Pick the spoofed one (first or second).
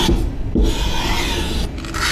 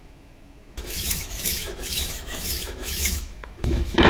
second